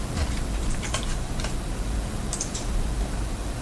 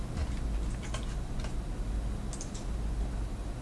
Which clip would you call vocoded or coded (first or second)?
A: first